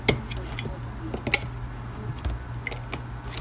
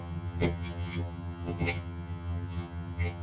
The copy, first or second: second